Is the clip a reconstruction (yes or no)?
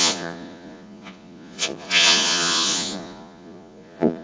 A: yes